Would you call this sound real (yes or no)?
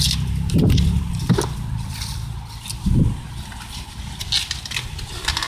yes